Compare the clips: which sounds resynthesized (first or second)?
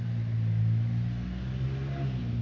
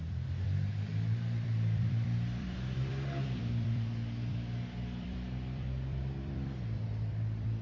second